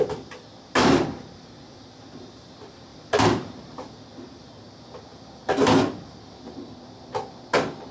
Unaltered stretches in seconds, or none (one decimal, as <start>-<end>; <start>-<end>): 0.0-0.8; 1.8-2.9; 3.9-7.9